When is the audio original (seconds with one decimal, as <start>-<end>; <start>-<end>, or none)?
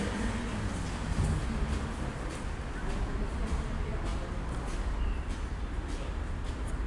0.0-6.9